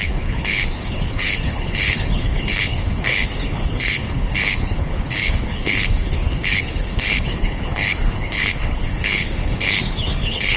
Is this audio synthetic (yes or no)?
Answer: yes